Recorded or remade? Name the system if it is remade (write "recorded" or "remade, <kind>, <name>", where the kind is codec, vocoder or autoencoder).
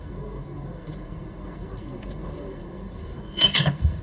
remade, codec, SNAC